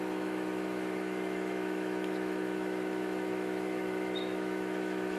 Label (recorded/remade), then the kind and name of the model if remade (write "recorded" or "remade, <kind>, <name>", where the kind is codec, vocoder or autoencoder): remade, autoencoder, DAC-VAE